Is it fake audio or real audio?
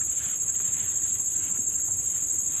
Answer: real